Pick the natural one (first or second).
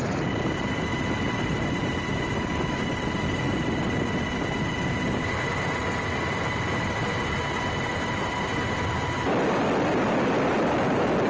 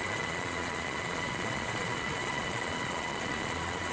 first